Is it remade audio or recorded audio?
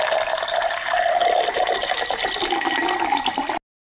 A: recorded